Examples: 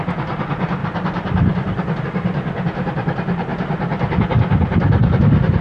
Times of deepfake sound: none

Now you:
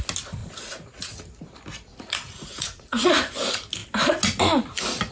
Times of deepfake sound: 0.4-1.2 (vocoder, Vocos); 1.9-3.3

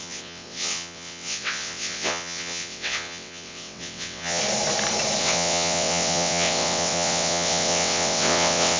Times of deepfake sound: 0.0-4.4 (vocoder, WaveNeXt); 5.2-8.8

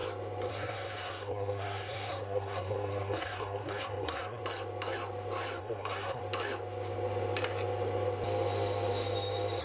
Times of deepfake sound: 0.5-4.4 (codec, SNAC); 5.6-6.2

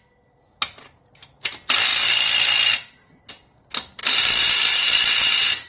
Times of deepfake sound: 4.0-5.7 (vocoder, BigVGAN v2)

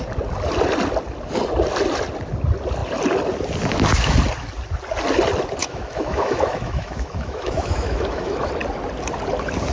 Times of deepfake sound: 5.6-8.5 (autoencoder, DAC-VAE)